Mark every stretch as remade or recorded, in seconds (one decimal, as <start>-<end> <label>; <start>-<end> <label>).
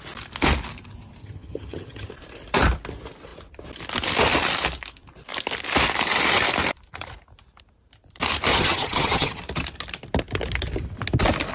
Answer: 0.0-1.2 recorded; 1.2-2.1 remade; 2.1-8.5 recorded; 8.5-9.4 remade; 9.4-11.5 recorded